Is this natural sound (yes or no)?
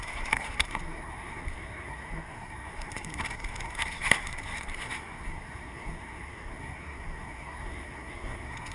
no